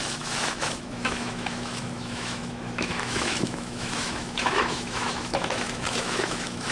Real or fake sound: fake